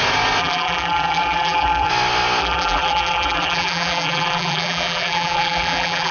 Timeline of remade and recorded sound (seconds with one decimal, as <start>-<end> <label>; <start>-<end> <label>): 0.0-0.4 recorded; 0.4-1.9 remade; 1.9-2.4 recorded; 2.4-6.1 remade